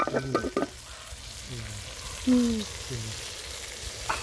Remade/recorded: recorded